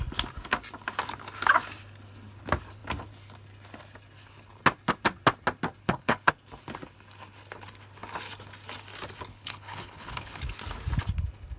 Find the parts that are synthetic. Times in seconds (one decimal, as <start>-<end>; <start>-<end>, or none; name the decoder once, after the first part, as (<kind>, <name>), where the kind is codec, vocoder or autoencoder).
5.8-6.3 (codec, HILCodec); 9.3-10.4